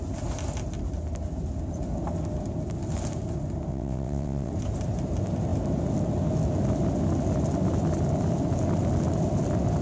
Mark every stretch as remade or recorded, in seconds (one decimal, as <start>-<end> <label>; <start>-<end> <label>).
0.0-3.7 recorded; 3.7-4.5 remade; 4.5-9.8 recorded

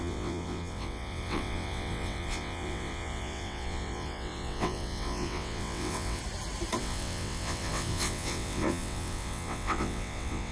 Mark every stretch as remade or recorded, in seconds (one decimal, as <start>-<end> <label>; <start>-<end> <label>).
0.0-6.2 remade; 6.2-6.8 recorded; 6.8-10.5 remade

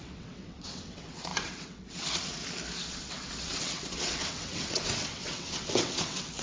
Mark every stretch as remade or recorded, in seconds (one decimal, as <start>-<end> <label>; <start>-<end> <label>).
0.0-2.4 remade; 2.4-2.9 recorded; 2.9-6.4 remade

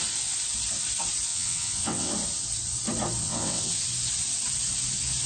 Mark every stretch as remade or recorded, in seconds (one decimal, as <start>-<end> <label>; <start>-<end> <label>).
0.0-1.3 recorded; 1.3-2.1 remade; 2.1-3.2 recorded; 3.2-3.7 remade; 3.7-5.3 recorded